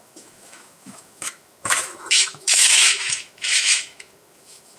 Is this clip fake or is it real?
fake